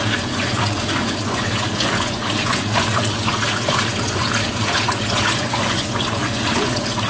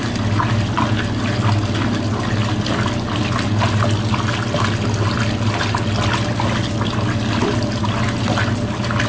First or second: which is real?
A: second